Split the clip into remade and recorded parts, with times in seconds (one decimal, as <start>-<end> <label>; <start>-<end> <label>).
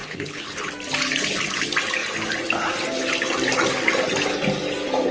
0.0-0.7 remade; 0.7-5.1 recorded